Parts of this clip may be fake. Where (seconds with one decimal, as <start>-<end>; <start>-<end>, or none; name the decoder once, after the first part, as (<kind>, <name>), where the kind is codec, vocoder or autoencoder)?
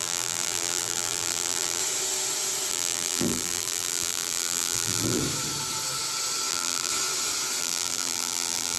0.0-1.8 (vocoder, BigVGAN v2); 2.7-5.2; 6.5-6.9; 7.6-8.8